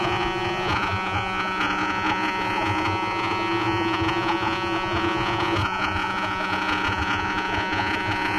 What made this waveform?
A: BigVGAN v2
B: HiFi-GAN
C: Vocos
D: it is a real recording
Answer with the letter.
C